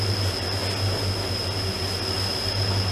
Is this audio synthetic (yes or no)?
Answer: no